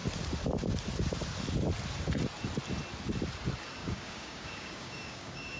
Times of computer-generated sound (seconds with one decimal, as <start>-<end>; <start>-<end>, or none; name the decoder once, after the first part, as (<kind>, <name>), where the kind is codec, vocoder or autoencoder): 3.8-5.6 (codec, DAC)